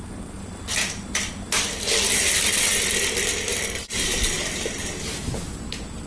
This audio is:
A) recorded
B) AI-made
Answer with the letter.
A